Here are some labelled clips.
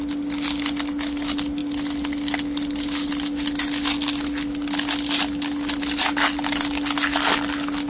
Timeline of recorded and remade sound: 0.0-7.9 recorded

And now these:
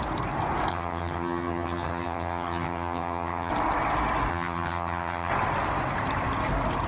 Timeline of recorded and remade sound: 0.0-0.7 recorded; 0.7-3.5 remade; 3.5-4.3 recorded; 4.3-5.3 remade; 5.3-6.9 recorded